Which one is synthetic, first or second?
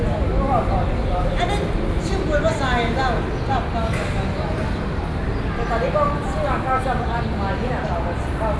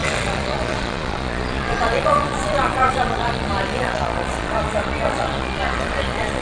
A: second